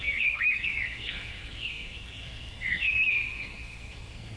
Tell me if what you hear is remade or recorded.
remade